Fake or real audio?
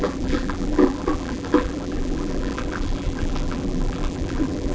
fake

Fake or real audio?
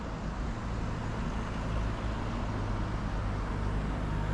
real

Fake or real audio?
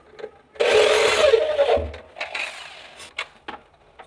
real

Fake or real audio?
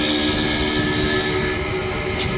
real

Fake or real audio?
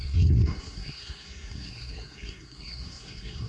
fake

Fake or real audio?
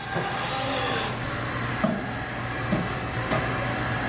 real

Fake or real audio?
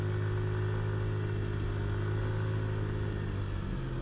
real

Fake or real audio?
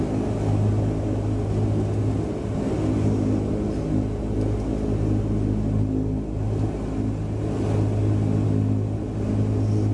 real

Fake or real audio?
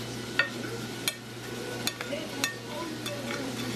real